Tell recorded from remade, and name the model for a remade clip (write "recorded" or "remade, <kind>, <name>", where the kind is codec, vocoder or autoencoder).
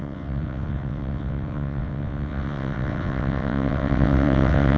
remade, vocoder, WaveNeXt